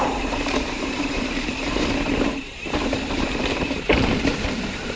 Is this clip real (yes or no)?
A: no